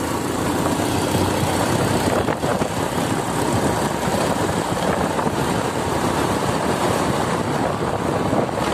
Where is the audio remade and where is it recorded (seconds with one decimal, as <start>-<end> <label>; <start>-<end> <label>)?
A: 0.0-4.1 recorded; 4.1-7.4 remade; 7.4-8.7 recorded